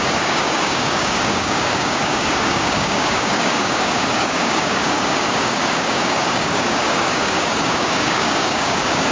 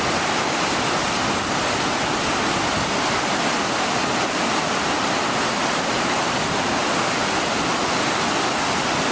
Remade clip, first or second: first